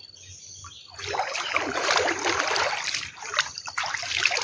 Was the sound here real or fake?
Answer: real